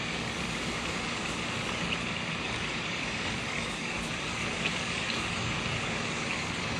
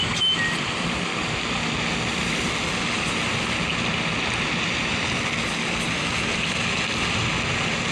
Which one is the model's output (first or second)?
first